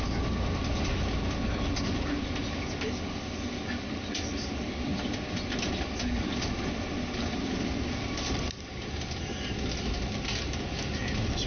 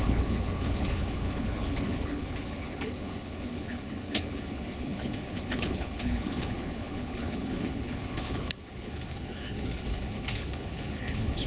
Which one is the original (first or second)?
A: first